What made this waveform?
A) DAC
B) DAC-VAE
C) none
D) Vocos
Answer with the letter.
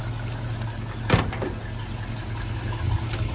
C